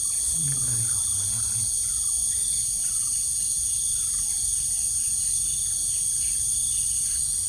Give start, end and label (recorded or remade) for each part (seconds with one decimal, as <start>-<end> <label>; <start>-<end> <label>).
0.0-7.5 recorded